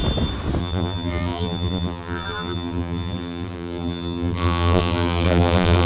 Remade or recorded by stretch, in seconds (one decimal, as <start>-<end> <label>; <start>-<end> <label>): 0.0-0.6 recorded; 0.6-5.9 remade